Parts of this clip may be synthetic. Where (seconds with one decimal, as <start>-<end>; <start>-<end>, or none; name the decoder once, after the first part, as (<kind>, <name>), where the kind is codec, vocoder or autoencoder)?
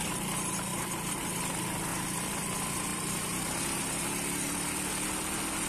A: 0.7-1.4 (vocoder, BigVGAN v2); 2.9-3.6